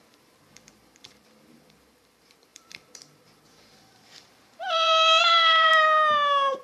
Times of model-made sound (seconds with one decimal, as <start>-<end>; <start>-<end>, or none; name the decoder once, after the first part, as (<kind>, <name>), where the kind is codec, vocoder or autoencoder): 0.0-5.7 (vocoder, BigVGAN v2)